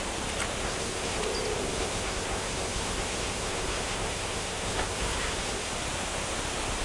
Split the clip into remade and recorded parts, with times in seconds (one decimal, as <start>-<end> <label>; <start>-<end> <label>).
0.0-0.6 recorded; 0.6-1.2 remade; 1.2-1.6 recorded; 1.6-5.7 remade; 5.7-6.8 recorded

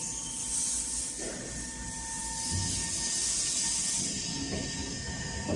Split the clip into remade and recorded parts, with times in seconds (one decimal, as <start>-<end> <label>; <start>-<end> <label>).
0.0-5.6 recorded

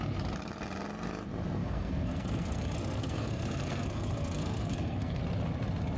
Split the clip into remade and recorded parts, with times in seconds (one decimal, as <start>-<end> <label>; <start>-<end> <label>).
0.0-1.6 recorded; 1.6-5.2 remade; 5.2-6.0 recorded

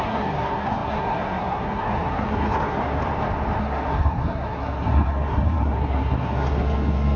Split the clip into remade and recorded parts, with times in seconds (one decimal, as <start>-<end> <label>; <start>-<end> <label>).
0.0-3.0 remade; 3.0-3.6 recorded; 3.6-7.2 remade

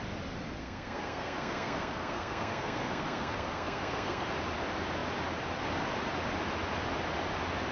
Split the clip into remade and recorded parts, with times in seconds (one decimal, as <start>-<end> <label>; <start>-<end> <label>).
0.0-0.6 recorded; 0.6-4.3 remade; 4.3-7.7 recorded

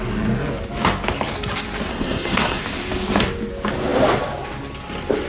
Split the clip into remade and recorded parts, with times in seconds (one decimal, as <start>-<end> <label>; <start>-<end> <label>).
0.0-1.9 recorded; 1.9-2.6 remade; 2.6-5.3 recorded

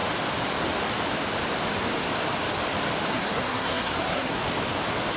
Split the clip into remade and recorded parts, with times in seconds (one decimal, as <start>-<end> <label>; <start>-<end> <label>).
0.0-3.1 recorded; 3.1-4.4 remade; 4.4-5.2 recorded

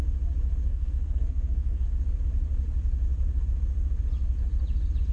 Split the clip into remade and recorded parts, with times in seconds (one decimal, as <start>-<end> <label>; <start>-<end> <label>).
0.0-0.7 recorded; 0.7-1.9 remade; 1.9-5.1 recorded